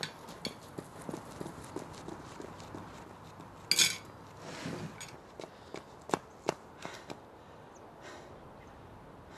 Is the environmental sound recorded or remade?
recorded